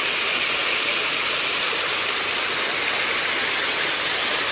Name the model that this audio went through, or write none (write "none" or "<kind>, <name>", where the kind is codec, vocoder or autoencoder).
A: none